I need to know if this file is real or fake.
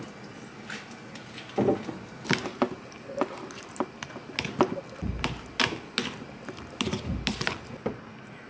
real